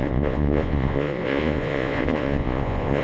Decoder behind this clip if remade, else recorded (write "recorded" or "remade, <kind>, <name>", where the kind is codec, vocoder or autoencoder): remade, vocoder, Vocos